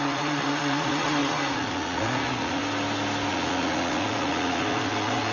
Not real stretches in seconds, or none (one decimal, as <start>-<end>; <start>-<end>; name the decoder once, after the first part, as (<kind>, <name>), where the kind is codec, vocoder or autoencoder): 0.0-2.6 (vocoder, Vocos); 3.3-5.3